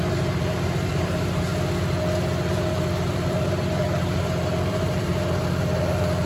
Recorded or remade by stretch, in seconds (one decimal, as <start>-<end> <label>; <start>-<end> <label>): 0.0-1.5 remade; 1.5-2.5 recorded; 2.5-6.3 remade